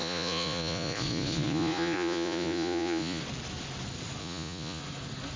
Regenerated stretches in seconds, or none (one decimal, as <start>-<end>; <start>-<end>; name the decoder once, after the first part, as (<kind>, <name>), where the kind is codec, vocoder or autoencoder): 0.0-3.2 (vocoder, Vocos); 4.2-4.8